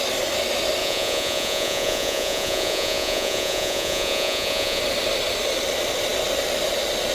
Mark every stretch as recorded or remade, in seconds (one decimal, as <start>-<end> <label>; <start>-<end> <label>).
0.0-0.8 recorded; 0.8-4.8 remade; 4.8-7.1 recorded